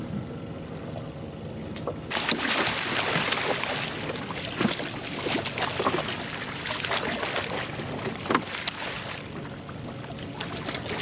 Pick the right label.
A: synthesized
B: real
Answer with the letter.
B